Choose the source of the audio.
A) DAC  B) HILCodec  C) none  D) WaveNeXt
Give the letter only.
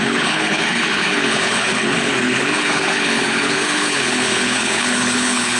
B